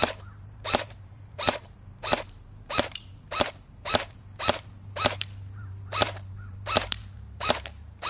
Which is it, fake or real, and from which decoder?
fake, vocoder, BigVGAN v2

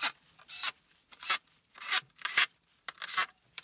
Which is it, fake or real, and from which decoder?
fake, vocoder, BigVGAN v2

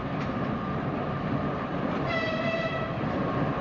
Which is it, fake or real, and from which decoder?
fake, vocoder, BigVGAN v2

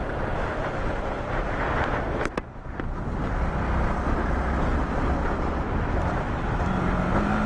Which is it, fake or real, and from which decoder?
real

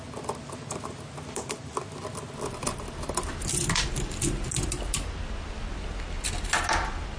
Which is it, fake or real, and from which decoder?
real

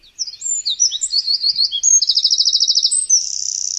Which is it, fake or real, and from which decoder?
real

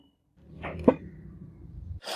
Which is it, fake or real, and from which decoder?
fake, vocoder, BigVGAN v2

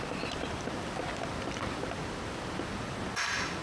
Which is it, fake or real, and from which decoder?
real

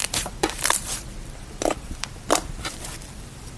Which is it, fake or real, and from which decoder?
fake, vocoder, BigVGAN v2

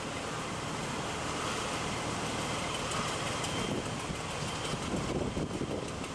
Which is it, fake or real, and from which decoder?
real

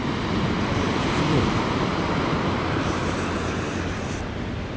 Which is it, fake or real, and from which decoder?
fake, vocoder, BigVGAN v2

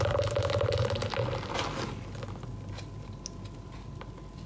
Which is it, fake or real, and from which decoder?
real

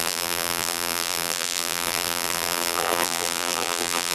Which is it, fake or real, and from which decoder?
fake, vocoder, BigVGAN v2